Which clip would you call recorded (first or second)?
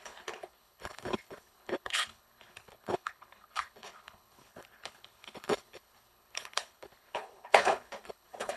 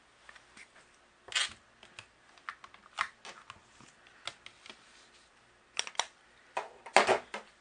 second